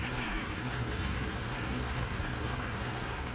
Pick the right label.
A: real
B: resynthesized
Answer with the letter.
B